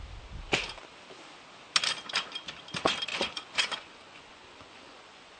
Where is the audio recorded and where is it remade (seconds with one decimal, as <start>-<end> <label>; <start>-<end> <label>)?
0.0-3.1 recorded; 3.1-5.4 remade